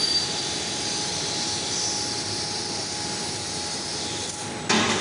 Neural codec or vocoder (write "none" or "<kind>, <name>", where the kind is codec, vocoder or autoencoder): none